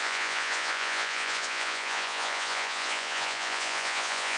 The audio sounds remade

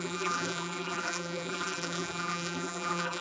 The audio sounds remade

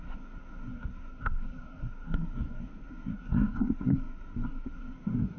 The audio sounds remade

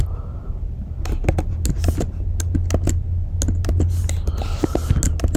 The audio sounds recorded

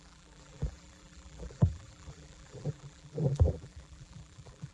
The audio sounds remade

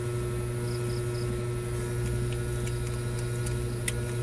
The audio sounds recorded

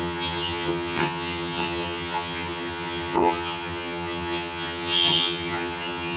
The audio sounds remade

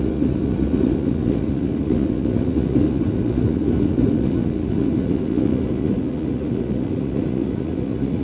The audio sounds remade